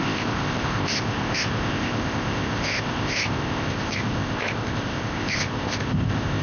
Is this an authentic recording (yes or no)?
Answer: no